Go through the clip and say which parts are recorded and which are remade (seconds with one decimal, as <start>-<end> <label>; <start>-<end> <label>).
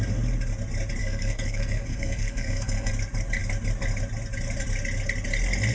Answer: 0.0-1.0 recorded; 1.0-2.9 remade; 2.9-5.7 recorded